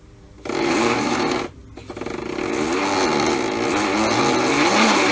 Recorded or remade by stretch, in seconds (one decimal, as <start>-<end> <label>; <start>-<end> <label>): 0.0-1.6 remade; 1.6-5.1 recorded